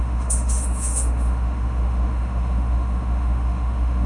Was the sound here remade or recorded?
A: remade